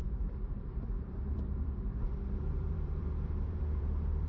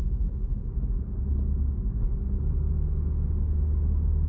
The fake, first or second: first